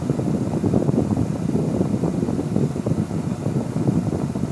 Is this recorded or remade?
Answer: recorded